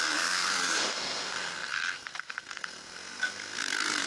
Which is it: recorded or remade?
remade